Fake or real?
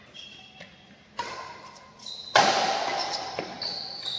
real